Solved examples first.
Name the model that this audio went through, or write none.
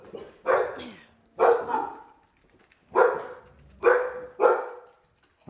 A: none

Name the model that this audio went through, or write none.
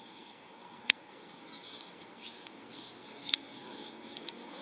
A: codec, SNAC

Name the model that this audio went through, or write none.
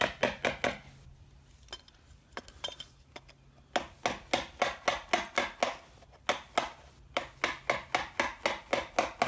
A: none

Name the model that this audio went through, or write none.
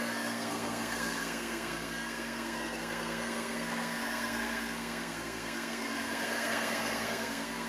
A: codec, SNAC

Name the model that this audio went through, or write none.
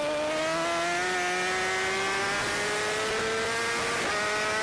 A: none